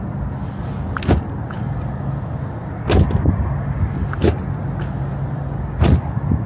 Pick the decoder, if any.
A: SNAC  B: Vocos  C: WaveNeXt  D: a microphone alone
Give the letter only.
D